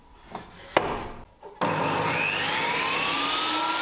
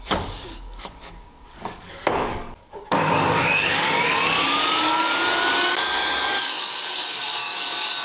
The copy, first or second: second